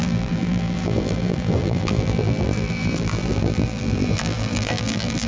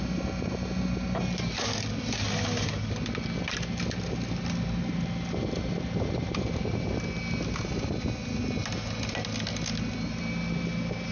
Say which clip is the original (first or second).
second